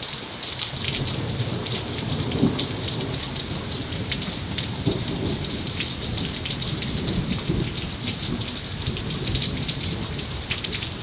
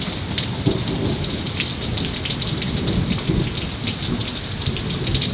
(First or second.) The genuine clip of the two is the second